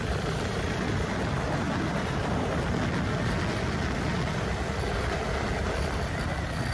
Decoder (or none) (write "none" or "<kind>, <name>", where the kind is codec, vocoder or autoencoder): none